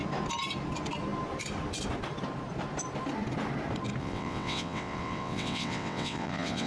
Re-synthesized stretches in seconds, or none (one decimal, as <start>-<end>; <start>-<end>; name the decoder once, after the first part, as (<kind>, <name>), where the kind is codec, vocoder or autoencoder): 4.0-6.7 (vocoder, WaveNeXt)